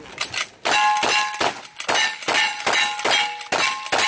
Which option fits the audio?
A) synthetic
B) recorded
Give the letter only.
B